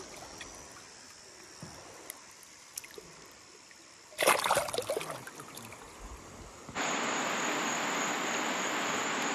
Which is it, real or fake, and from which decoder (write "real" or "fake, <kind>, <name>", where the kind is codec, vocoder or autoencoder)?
real